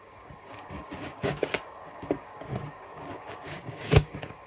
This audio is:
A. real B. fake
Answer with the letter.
B